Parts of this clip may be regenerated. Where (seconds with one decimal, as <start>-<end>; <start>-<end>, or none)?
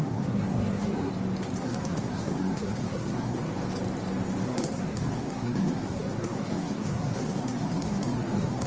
0.0-1.1; 1.6-3.5; 4.5-8.7